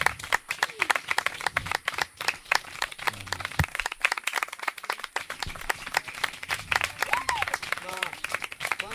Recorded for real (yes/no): no